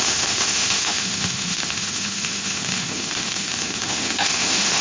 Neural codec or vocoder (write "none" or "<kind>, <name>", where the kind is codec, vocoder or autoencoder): autoencoder, DAC-VAE